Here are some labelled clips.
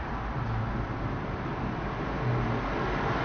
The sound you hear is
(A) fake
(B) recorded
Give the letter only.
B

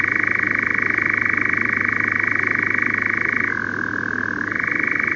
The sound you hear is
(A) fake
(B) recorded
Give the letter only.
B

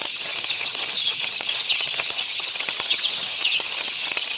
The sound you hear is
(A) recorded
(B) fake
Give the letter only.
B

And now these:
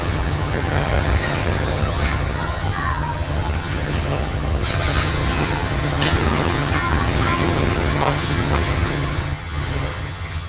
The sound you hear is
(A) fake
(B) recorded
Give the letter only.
A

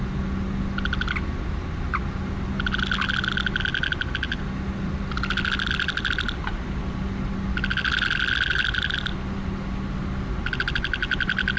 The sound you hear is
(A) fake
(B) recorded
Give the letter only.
B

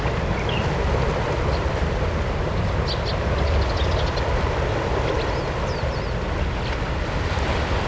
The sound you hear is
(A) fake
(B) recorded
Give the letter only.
B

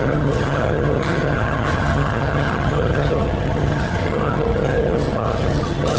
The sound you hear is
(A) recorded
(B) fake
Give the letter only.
B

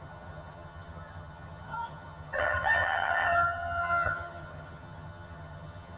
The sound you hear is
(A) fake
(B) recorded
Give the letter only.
A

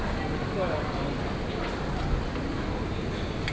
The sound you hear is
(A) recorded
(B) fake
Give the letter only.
A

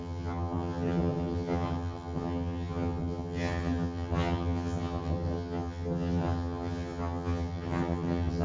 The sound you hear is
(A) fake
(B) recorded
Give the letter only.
A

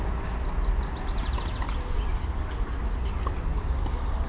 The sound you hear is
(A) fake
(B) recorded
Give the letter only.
B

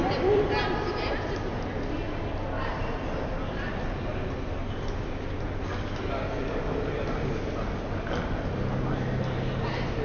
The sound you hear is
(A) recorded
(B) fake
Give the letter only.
A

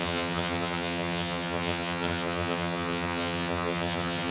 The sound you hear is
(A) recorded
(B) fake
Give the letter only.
B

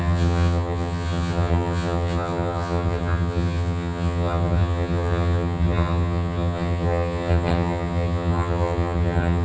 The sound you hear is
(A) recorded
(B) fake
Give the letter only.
B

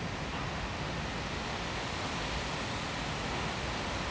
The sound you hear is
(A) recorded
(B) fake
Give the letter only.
A